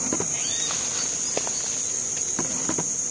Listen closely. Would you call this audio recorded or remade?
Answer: recorded